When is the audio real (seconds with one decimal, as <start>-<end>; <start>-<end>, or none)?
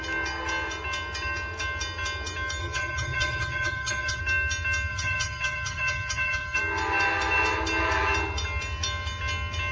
0.0-2.6; 4.2-4.9; 6.6-9.7